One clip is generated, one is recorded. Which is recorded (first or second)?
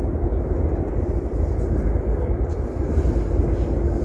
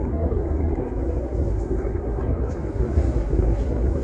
first